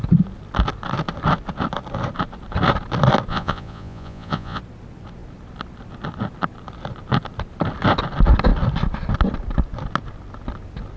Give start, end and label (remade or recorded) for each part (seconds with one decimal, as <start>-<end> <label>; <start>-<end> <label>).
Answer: 0.0-3.3 recorded; 3.3-4.6 remade; 4.6-11.0 recorded